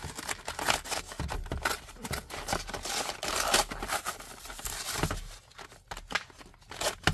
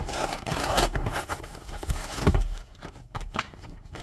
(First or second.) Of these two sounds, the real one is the first